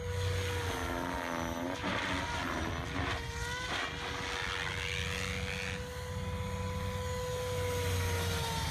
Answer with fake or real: real